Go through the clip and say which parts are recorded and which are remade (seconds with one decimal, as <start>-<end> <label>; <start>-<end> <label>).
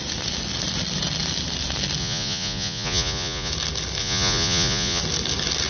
0.0-2.0 recorded; 2.0-3.5 remade; 3.5-4.0 recorded; 4.0-5.0 remade; 5.0-5.7 recorded